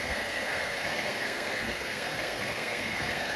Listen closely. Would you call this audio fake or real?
fake